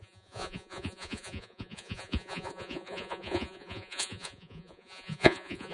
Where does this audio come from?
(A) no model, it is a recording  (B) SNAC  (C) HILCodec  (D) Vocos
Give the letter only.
D